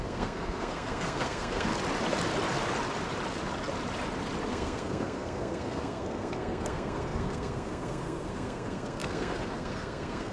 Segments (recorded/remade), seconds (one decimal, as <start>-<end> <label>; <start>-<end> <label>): 0.0-1.7 remade; 1.7-4.4 recorded; 4.4-10.3 remade